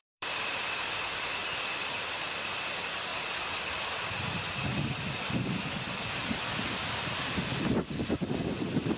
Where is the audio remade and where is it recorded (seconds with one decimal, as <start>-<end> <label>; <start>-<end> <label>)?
0.0-1.4 remade; 1.4-2.5 recorded; 2.5-3.1 remade; 3.1-7.1 recorded; 7.1-9.0 remade